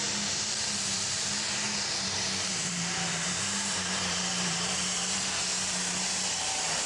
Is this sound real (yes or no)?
no